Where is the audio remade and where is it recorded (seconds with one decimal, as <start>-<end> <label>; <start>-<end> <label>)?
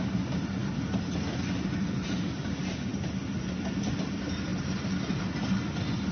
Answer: 0.0-6.1 recorded